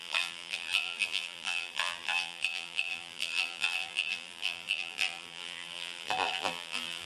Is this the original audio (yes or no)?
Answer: no